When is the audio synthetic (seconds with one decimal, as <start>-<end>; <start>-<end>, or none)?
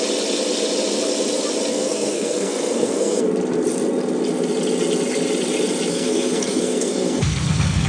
1.7-3.3; 5.9-7.9